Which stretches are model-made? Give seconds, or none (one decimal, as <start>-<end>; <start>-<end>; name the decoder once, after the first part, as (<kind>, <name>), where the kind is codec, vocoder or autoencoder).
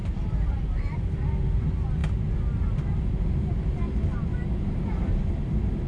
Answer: none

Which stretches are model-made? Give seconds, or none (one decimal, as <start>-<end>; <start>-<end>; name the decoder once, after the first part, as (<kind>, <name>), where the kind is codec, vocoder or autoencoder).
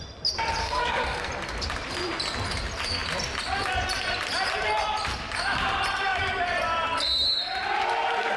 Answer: 0.6-1.3 (codec, SNAC)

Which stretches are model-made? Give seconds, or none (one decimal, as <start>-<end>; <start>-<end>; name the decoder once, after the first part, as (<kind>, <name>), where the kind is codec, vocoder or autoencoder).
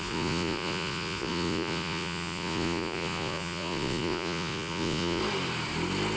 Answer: 0.0-5.2 (vocoder, Vocos)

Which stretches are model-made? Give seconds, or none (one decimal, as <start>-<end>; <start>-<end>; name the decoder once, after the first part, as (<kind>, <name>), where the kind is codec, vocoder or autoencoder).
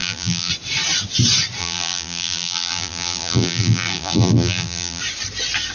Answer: 0.0-0.5 (vocoder, BigVGAN v2); 1.6-5.0